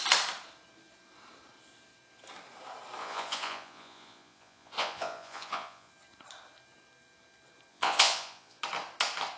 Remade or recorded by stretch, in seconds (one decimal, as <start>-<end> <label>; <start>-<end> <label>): 0.0-3.0 recorded; 3.0-5.9 remade; 5.9-7.7 recorded; 7.7-8.6 remade; 8.6-9.4 recorded